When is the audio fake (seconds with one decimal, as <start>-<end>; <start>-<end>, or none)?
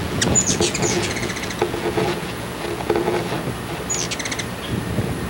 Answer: 0.0-3.2